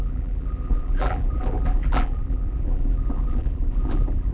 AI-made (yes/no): yes